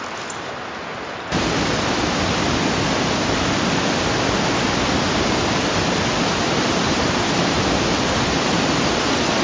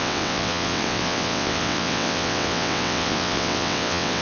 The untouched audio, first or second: first